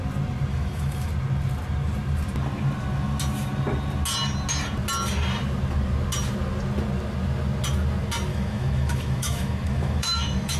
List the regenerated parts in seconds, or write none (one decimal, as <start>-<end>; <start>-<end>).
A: 0.5-1.1; 8.3-10.6